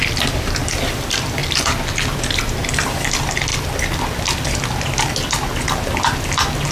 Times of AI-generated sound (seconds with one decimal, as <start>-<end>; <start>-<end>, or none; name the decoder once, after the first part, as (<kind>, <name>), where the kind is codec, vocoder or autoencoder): none